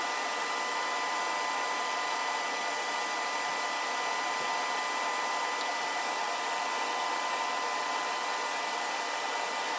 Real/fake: real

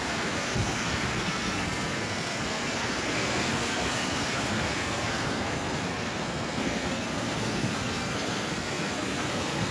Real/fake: fake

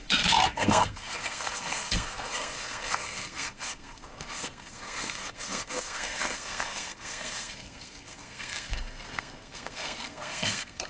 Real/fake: fake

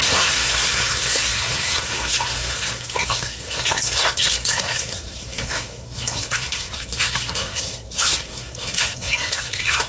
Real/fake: fake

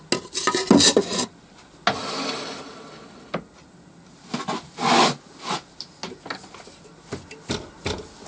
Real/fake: real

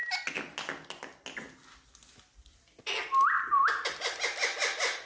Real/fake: real